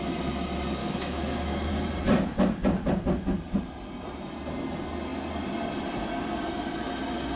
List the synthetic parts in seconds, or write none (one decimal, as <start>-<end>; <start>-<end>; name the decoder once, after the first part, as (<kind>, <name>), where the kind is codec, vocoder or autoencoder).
0.8-1.7 (autoencoder, DAC-VAE)

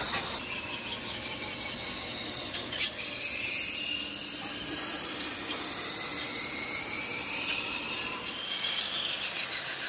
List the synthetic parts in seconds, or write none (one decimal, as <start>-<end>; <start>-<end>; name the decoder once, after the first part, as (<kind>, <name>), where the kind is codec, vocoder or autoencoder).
none